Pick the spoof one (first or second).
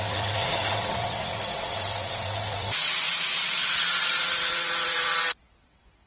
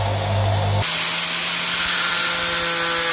first